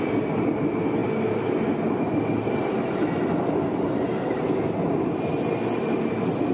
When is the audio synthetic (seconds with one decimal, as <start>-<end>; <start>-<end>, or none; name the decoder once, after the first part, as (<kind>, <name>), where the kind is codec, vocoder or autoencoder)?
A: none